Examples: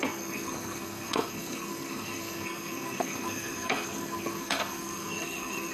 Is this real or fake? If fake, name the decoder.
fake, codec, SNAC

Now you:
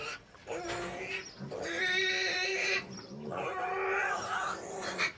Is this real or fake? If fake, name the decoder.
real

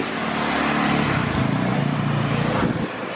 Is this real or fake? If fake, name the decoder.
real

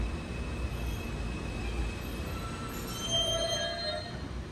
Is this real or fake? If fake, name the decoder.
real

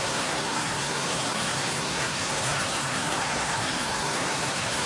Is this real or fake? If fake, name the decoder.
fake, codec, SNAC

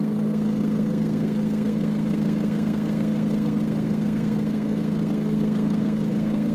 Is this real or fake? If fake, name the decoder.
fake, codec, SNAC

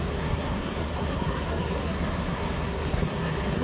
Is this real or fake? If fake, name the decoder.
fake, codec, SNAC